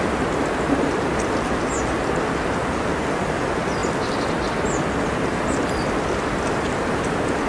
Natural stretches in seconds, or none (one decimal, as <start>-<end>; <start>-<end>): 0.0-7.5